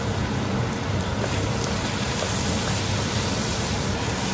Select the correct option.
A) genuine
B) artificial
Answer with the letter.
B